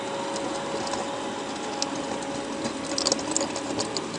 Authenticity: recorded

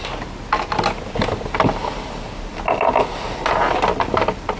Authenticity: recorded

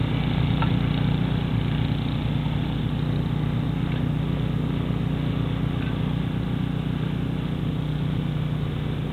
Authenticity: recorded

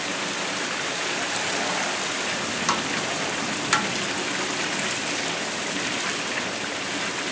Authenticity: recorded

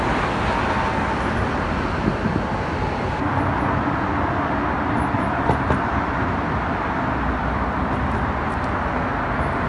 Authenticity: recorded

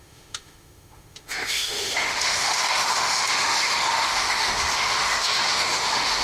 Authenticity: remade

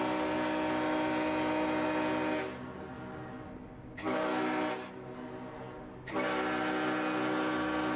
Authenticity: recorded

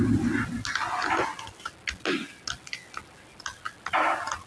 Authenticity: recorded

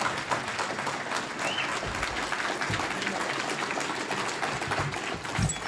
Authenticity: recorded